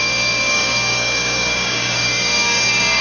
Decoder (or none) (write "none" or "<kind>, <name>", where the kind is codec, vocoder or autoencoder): codec, DAC